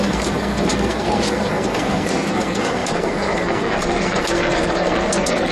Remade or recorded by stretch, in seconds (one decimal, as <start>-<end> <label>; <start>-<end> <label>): 0.0-5.5 remade

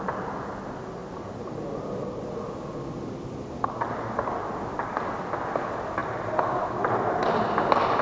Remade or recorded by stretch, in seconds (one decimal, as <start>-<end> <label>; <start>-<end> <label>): 0.0-8.0 recorded

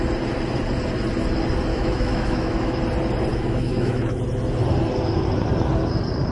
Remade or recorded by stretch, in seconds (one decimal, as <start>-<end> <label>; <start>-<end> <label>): 0.0-1.7 recorded; 1.7-2.8 remade; 2.8-3.3 recorded; 3.3-4.2 remade; 4.2-6.3 recorded

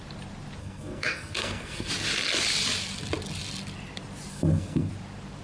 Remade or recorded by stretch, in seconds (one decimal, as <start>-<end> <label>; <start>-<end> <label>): 0.0-0.6 recorded; 0.6-1.9 remade; 1.9-4.3 recorded; 4.3-4.9 remade; 4.9-5.4 recorded

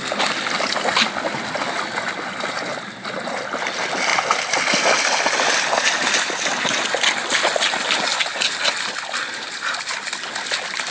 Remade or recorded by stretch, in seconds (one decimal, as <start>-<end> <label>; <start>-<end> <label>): 0.0-10.9 recorded

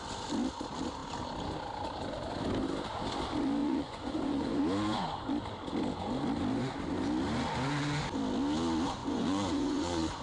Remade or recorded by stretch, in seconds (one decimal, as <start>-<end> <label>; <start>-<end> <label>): 0.0-3.6 recorded; 3.6-4.6 remade; 4.6-9.0 recorded; 9.0-10.2 remade

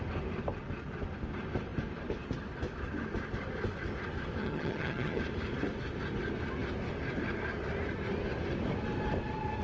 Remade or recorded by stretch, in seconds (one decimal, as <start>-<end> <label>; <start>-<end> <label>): 0.0-4.4 recorded; 4.4-5.2 remade; 5.2-9.6 recorded